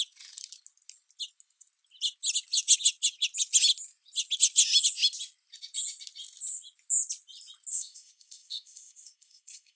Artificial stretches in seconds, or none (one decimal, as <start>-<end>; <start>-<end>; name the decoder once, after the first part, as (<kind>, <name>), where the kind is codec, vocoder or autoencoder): 7.7-9.8 (codec, ZipCodec)